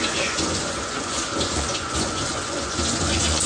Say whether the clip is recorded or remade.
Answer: remade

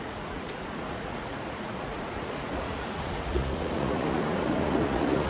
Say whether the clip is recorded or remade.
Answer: remade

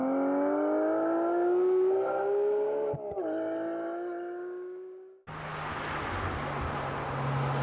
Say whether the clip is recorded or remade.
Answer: recorded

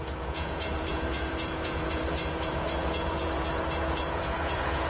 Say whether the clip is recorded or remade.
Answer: remade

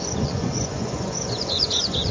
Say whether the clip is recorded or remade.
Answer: remade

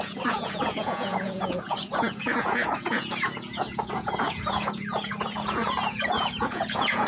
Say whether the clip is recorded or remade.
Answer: remade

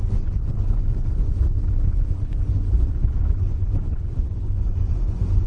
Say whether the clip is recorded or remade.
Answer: remade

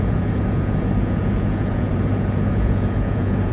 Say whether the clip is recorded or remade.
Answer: remade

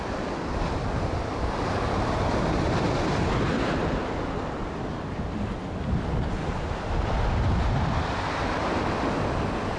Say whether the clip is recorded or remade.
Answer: recorded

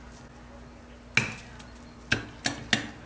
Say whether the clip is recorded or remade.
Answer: recorded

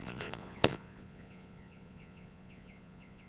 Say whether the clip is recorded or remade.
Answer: remade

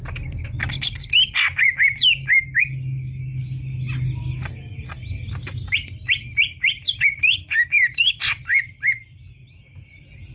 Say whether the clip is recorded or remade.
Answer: recorded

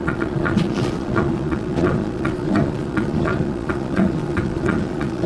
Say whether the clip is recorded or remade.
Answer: remade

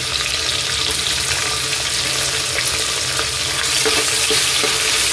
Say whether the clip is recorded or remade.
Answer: recorded